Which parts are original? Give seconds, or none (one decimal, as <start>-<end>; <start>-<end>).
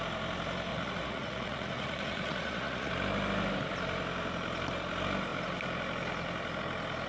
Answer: 0.0-0.7; 2.9-7.1